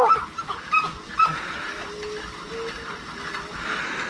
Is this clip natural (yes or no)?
yes